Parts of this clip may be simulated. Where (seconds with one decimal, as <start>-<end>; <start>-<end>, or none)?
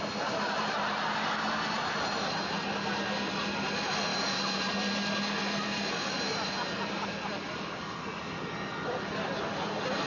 none